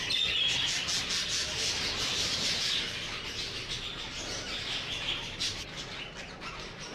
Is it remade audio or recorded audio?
recorded